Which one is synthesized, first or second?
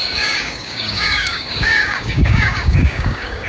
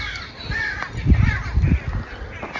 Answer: first